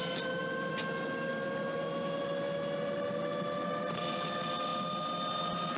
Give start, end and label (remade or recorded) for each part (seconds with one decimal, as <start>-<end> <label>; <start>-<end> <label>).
0.0-0.7 remade; 0.7-5.8 recorded